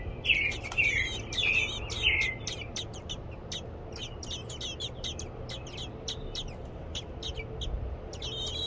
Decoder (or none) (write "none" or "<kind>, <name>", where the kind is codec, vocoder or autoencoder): none